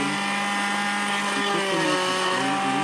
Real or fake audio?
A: real